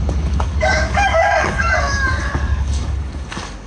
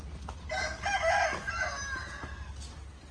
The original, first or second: second